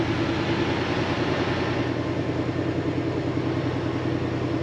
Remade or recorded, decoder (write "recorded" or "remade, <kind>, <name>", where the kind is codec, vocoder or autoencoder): recorded